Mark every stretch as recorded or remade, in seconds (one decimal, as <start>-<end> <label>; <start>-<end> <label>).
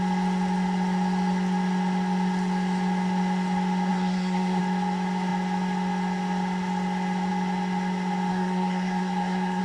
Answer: 0.0-3.9 recorded; 3.9-4.6 remade; 4.6-8.3 recorded; 8.3-9.6 remade